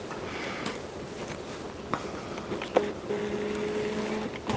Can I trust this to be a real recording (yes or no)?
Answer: yes